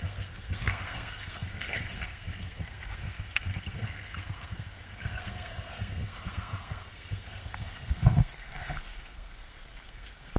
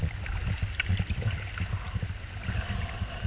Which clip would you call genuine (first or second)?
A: second